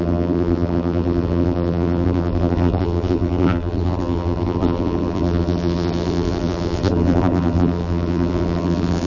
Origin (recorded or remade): remade